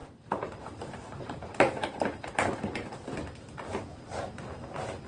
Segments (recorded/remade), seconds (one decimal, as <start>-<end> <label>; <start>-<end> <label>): 0.0-3.1 remade; 3.1-5.1 recorded